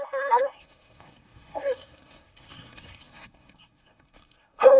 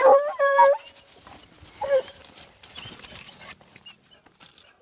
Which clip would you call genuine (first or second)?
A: second